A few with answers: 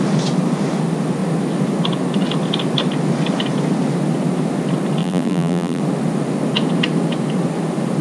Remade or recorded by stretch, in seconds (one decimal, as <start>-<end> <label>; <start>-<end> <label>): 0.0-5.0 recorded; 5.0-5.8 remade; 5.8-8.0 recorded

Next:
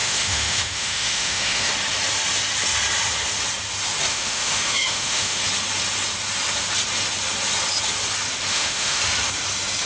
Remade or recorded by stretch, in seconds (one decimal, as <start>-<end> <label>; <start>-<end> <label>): 0.0-1.7 remade; 1.7-4.1 recorded; 4.1-5.4 remade; 5.4-8.5 recorded; 8.5-9.0 remade; 9.0-9.9 recorded

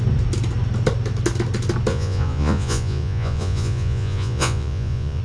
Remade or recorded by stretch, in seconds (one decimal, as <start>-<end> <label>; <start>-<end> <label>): 0.0-1.9 recorded; 1.9-5.2 remade

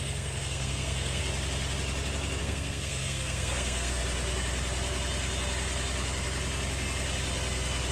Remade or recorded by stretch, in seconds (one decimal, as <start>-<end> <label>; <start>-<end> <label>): 0.0-1.2 remade; 1.2-2.4 recorded; 2.4-4.0 remade; 4.0-7.9 recorded

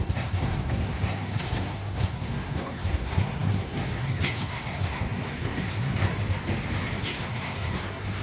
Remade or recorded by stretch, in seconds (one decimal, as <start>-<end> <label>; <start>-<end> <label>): 0.0-6.1 remade; 6.1-7.0 recorded; 7.0-8.2 remade